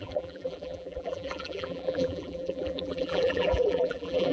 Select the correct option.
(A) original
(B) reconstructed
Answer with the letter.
B